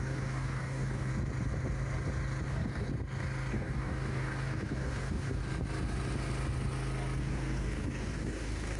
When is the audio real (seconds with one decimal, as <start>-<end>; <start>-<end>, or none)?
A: 1.1-2.5; 2.9-3.5; 5.4-7.2